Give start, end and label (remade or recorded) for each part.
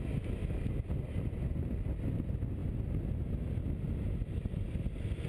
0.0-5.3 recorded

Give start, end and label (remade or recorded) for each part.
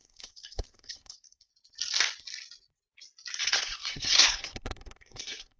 0.0-1.5 remade; 1.5-3.4 recorded; 3.4-5.6 remade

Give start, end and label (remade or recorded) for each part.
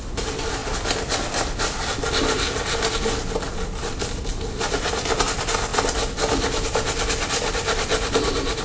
0.0-8.6 recorded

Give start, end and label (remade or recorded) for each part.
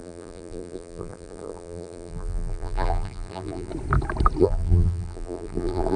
0.0-3.7 remade; 3.7-4.4 recorded; 4.4-6.0 remade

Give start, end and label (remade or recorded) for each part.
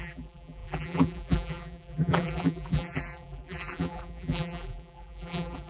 0.0-5.7 remade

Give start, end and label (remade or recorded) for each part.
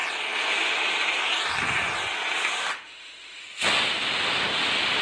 0.0-2.5 recorded; 2.5-3.4 remade; 3.4-5.0 recorded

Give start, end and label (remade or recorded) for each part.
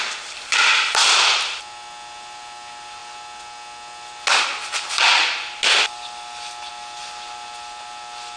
0.0-8.4 recorded